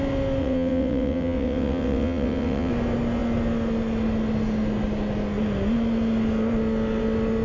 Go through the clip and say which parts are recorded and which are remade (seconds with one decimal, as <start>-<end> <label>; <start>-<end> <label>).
0.0-0.4 recorded; 0.4-2.7 remade; 2.7-7.4 recorded